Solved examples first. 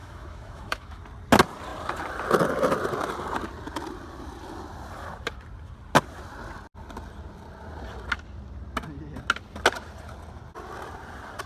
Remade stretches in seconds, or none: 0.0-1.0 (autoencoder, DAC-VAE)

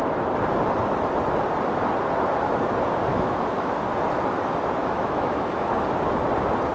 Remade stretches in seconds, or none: 3.1-3.8 (autoencoder, DAC-VAE); 4.8-5.7

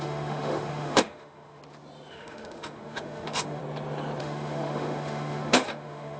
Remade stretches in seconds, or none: 0.0-1.6 (autoencoder, DAC-VAE); 2.1-3.6; 4.2-6.2

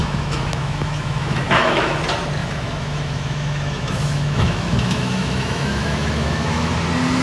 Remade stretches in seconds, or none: 0.0-2.0 (autoencoder, DAC-VAE); 2.4-6.7

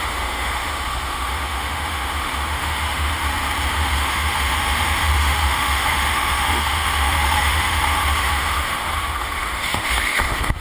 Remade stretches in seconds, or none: 0.0-3.1 (autoencoder, DAC-VAE); 3.7-10.6

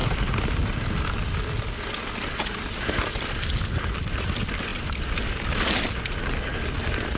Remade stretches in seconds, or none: none

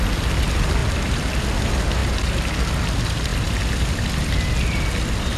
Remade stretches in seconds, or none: none